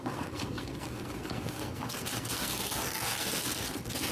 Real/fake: fake